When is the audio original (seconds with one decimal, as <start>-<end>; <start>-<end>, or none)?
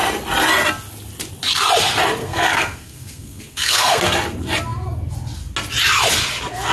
0.0-2.2; 4.0-6.7